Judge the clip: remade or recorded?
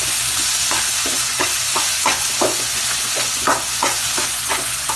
remade